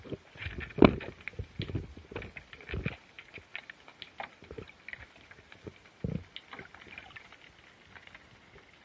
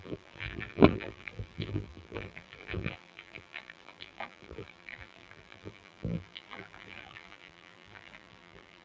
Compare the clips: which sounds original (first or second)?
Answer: first